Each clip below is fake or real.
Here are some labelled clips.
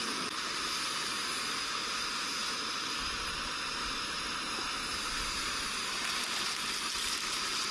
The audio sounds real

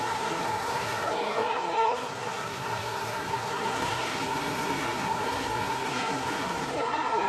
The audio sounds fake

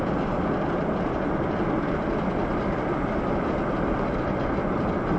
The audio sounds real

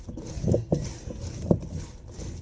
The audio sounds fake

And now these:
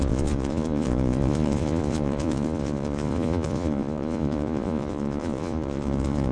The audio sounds fake